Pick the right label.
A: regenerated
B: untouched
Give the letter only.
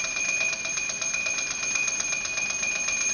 B